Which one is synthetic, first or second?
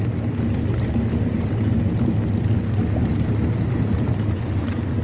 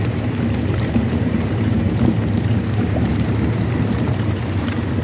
second